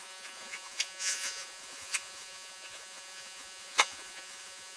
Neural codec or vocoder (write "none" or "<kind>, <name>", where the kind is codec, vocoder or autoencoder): vocoder, Vocos